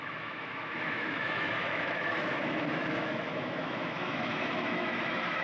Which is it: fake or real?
fake